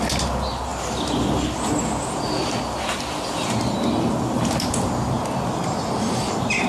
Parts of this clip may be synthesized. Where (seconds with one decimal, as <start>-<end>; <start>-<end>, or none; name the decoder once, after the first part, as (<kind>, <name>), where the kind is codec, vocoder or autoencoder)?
none